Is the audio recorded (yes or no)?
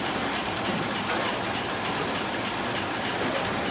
yes